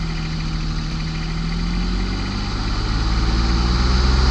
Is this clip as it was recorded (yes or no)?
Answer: yes